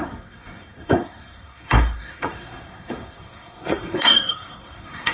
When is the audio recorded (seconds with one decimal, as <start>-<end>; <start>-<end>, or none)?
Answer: none